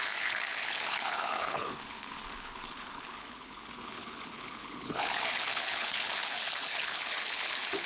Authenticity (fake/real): fake